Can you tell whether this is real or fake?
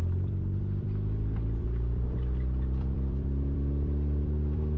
fake